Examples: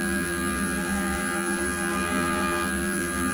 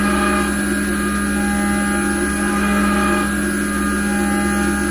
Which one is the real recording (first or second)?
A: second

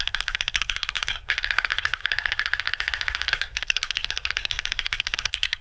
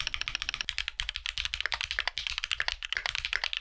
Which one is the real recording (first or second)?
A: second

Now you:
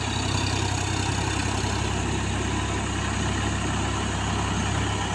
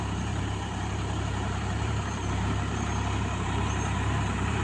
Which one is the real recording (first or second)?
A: first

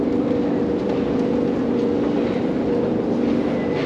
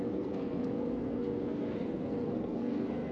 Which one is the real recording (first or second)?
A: first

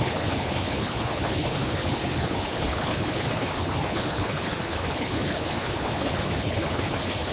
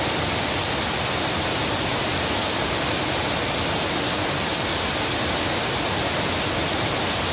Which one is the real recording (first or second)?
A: second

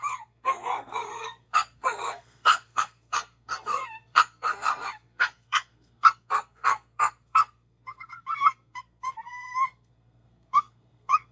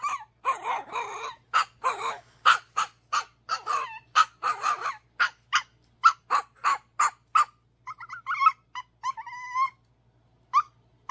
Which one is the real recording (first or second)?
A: second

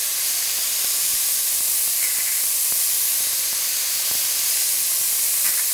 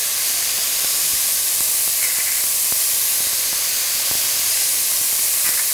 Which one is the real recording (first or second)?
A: first